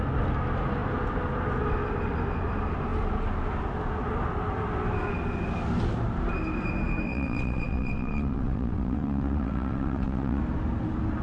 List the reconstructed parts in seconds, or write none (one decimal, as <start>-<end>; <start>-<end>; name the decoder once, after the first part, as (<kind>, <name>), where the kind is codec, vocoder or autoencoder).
7.1-10.4 (vocoder, WaveNeXt)